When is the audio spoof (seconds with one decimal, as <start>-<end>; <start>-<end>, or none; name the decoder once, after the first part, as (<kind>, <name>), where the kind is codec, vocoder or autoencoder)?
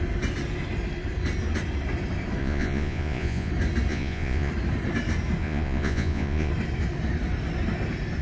2.4-3.5 (vocoder, Vocos); 3.9-4.5; 5.4-6.5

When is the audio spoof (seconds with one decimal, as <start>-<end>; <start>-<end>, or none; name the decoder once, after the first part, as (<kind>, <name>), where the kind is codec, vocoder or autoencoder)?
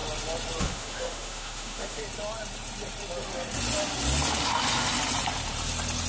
0.6-2.0 (autoencoder, DAC-VAE)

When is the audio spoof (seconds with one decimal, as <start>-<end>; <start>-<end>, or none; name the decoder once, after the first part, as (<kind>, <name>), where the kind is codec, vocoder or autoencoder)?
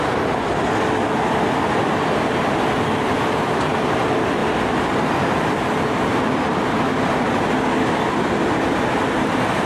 none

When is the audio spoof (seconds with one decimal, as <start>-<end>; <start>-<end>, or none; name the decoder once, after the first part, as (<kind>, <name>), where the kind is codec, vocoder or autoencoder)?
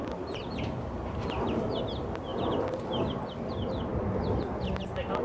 0.4-1.6 (vocoder, BigVGAN v2)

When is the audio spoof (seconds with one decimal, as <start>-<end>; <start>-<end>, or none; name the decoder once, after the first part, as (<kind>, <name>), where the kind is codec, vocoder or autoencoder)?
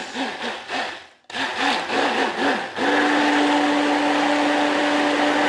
none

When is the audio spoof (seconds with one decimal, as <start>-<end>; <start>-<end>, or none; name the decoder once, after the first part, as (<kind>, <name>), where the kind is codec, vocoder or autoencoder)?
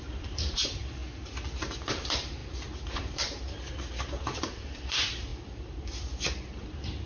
0.0-1.0 (vocoder, BigVGAN v2); 1.6-7.1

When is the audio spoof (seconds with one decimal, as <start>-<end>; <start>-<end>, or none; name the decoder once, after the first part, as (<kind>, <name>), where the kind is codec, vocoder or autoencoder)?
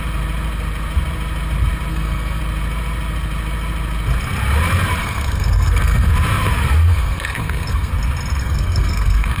1.9-2.4 (codec, SNAC); 5.0-6.1; 6.9-7.9; 8.4-9.4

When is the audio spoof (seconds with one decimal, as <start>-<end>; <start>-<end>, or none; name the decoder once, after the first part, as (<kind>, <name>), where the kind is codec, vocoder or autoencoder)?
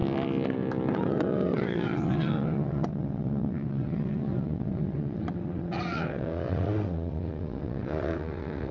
0.9-8.7 (vocoder, WaveNeXt)